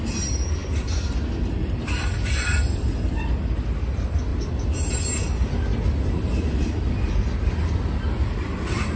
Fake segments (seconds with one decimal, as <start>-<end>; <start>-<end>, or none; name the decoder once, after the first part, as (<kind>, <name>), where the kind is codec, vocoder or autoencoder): none